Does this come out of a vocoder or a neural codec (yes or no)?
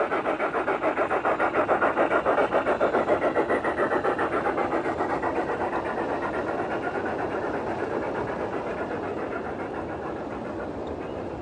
no